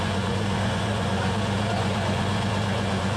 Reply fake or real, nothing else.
fake